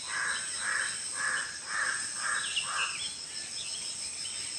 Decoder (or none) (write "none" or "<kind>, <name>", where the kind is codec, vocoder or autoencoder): none